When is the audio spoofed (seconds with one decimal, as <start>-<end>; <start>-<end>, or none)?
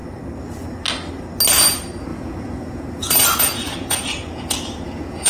2.1-5.3